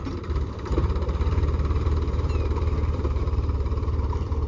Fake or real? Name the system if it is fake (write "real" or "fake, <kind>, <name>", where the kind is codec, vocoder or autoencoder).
fake, vocoder, BigVGAN v2